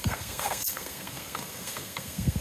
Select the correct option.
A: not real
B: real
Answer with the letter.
A